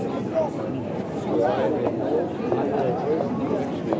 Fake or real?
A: real